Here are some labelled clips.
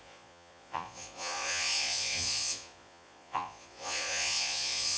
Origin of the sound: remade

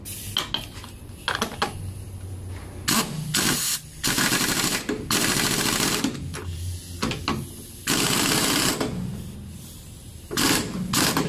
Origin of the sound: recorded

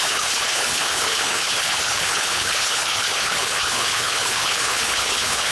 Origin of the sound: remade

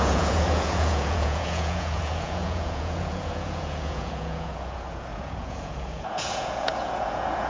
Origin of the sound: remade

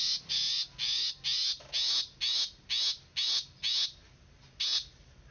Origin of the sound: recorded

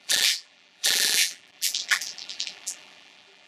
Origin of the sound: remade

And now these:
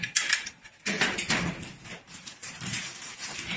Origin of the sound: remade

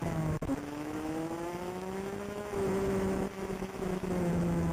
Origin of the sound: remade